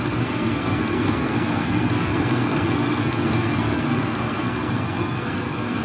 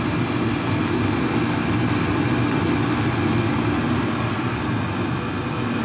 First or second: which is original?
second